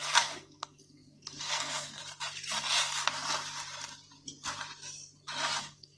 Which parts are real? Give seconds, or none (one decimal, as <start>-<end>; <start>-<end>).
2.0-5.6